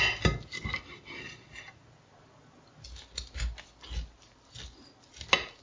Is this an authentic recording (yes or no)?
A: yes